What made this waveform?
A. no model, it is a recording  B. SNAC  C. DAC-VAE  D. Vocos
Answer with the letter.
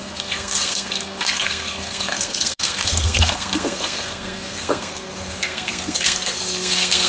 B